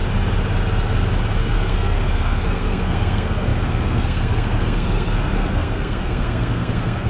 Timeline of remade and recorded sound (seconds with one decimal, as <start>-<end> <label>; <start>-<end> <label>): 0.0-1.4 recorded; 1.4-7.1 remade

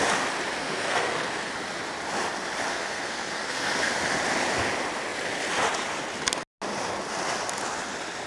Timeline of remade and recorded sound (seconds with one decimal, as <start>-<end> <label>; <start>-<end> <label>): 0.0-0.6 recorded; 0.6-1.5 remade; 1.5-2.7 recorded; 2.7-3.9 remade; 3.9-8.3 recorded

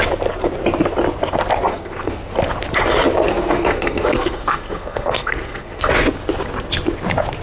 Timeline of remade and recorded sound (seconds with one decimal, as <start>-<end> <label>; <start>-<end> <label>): 0.0-1.7 recorded; 1.7-2.3 remade; 2.3-3.3 recorded; 3.3-5.9 remade; 5.9-7.4 recorded